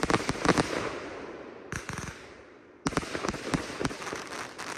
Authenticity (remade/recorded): recorded